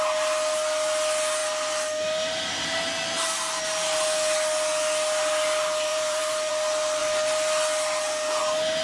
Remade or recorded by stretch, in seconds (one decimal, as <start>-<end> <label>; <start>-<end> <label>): 0.0-5.9 recorded; 5.9-6.5 remade; 6.5-8.8 recorded